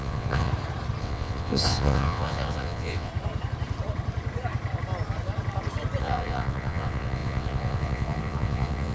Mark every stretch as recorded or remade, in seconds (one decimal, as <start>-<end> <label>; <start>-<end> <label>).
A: 0.0-0.5 remade; 0.5-1.0 recorded; 1.0-3.1 remade; 3.1-6.0 recorded; 6.0-8.9 remade